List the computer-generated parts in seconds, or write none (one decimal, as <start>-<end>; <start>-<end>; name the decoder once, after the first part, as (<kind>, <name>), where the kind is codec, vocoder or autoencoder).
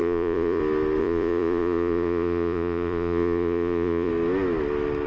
0.0-0.6 (vocoder, Vocos); 1.0-4.1